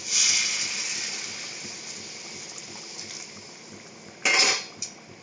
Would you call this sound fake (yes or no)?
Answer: no